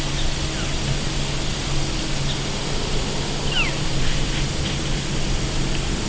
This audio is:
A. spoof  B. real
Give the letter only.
B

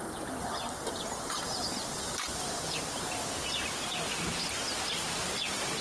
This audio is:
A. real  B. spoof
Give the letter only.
A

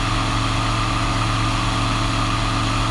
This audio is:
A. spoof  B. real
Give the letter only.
B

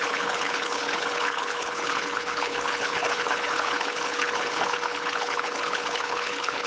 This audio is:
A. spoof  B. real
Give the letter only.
A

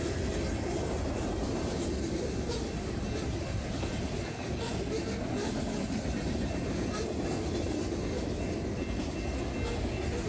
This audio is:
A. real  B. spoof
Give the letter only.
A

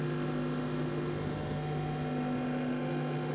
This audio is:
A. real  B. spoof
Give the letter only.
B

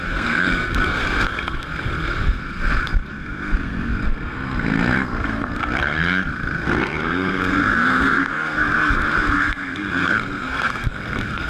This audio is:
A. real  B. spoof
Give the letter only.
B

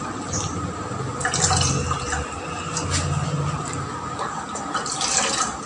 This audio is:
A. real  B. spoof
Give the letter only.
A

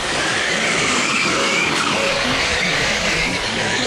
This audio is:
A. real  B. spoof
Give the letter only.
B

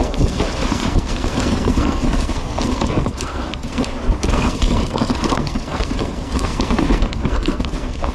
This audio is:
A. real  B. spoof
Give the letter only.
B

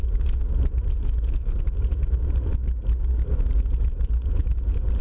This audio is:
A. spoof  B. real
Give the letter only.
B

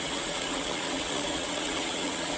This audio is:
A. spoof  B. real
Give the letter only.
A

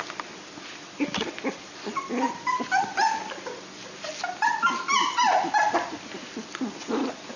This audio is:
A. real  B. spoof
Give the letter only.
A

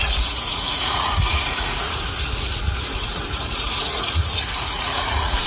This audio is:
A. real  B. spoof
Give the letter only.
B